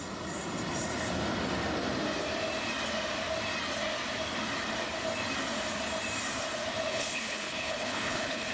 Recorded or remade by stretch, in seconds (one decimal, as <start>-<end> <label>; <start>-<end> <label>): 0.0-6.9 recorded; 6.9-8.5 remade

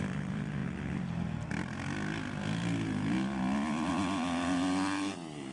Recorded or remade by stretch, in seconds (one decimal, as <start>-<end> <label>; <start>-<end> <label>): 0.0-5.5 recorded

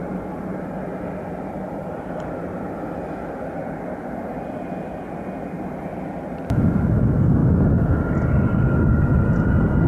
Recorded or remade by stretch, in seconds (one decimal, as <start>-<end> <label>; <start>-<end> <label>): 0.0-9.9 recorded

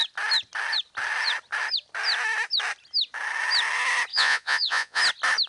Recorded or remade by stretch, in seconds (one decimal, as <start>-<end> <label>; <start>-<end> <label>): 0.0-4.1 recorded; 4.1-5.0 remade; 5.0-5.5 recorded

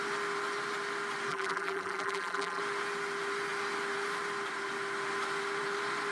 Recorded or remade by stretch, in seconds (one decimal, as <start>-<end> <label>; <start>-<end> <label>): 0.0-1.3 recorded; 1.3-2.6 remade; 2.6-6.1 recorded

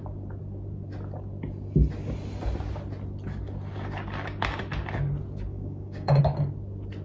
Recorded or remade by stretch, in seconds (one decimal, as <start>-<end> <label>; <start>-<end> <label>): 0.0-5.5 recorded; 5.5-6.2 remade; 6.2-7.0 recorded

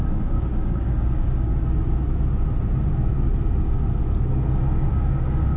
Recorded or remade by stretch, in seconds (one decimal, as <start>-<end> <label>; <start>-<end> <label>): 0.0-1.5 remade; 1.5-4.9 recorded; 4.9-5.6 remade